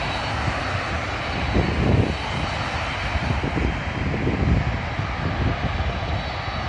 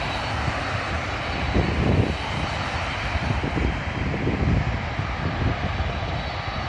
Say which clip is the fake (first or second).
second